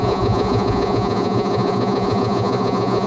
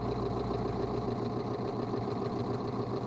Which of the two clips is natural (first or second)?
second